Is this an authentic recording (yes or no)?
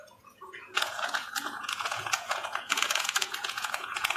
no